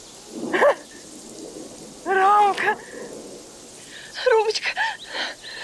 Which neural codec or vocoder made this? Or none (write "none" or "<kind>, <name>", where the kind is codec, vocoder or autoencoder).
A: none